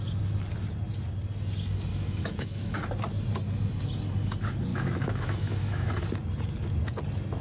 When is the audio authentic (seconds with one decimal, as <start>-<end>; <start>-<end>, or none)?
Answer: 0.0-1.9; 2.8-4.7; 5.9-7.4